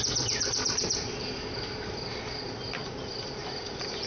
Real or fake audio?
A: fake